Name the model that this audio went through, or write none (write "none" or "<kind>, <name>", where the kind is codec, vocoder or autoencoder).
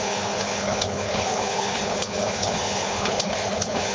codec, HILCodec